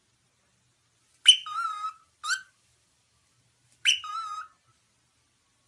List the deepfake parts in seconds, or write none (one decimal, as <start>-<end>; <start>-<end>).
1.4-3.4

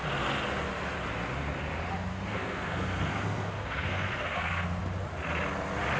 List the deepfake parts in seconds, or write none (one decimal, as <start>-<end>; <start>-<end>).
2.1-4.8

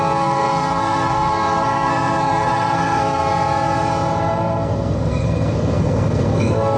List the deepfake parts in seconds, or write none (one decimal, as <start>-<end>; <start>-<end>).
0.0-3.3; 4.2-6.8

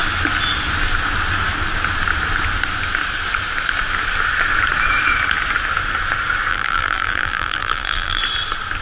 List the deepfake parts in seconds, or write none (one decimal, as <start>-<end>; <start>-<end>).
6.5-8.2